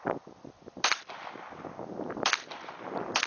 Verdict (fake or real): real